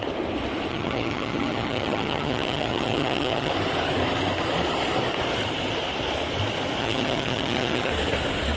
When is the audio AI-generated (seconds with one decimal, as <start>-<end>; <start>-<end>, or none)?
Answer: 0.7-3.5; 6.8-7.9